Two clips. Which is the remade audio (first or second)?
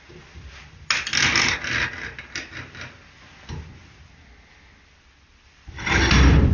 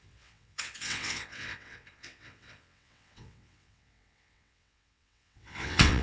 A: second